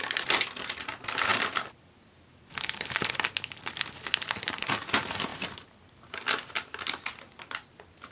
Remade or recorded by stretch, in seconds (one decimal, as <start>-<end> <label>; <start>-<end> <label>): 0.0-1.3 remade; 1.3-2.5 recorded; 2.5-5.3 remade; 5.3-7.3 recorded; 7.3-8.1 remade